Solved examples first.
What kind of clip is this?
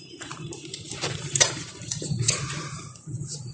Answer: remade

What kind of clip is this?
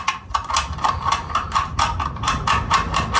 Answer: recorded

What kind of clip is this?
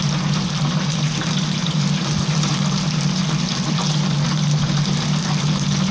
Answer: recorded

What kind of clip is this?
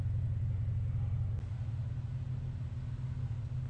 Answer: recorded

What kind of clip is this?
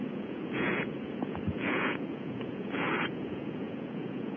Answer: remade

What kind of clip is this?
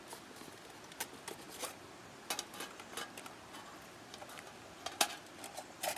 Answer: recorded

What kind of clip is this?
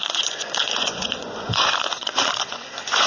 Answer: remade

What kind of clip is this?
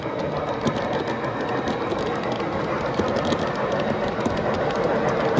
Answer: recorded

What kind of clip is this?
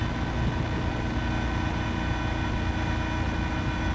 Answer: recorded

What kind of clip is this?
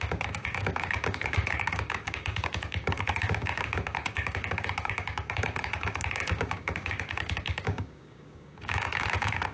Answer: remade